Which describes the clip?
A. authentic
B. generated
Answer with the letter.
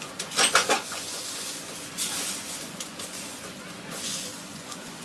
B